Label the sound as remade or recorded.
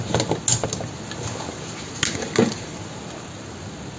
recorded